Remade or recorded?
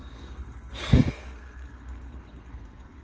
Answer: remade